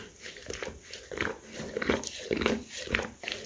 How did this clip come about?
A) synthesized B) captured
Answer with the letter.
B